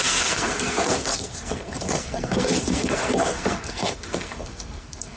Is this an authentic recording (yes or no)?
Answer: no